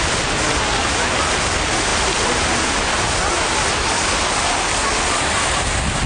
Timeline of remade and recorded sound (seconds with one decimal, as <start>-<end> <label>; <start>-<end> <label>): 0.0-6.1 recorded

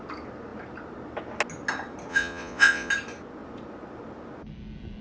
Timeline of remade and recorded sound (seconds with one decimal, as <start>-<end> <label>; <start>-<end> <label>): 0.0-2.1 recorded; 2.1-2.9 remade; 2.9-5.0 recorded

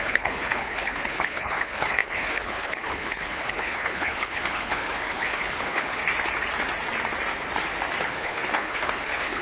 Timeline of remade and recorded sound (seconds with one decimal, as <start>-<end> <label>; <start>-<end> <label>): 0.0-6.0 remade; 6.0-8.0 recorded; 8.0-9.4 remade

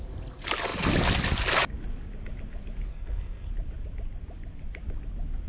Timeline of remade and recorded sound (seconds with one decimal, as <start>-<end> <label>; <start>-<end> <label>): 0.0-2.9 recorded; 2.9-3.5 remade; 3.5-5.5 recorded

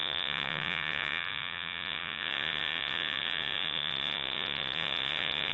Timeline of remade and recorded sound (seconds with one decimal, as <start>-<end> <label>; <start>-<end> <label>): 0.0-5.5 remade

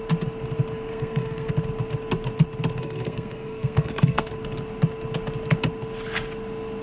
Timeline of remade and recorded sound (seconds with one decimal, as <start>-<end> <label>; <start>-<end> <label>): 0.0-0.9 recorded; 0.9-1.5 remade; 1.5-2.8 recorded; 2.8-4.3 remade; 4.3-6.8 recorded

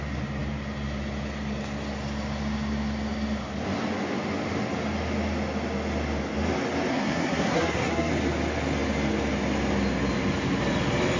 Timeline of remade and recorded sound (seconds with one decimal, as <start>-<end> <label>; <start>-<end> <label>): 0.0-6.9 recorded; 6.9-8.1 remade; 8.1-11.2 recorded